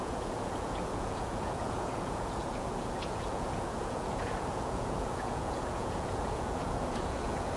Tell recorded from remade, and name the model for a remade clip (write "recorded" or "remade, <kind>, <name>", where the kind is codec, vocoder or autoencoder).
remade, vocoder, Vocos